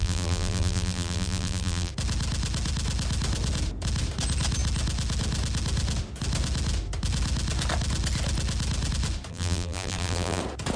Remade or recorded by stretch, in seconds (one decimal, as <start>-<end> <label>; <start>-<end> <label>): 0.0-1.9 remade; 1.9-9.3 recorded; 9.3-10.4 remade; 10.4-10.8 recorded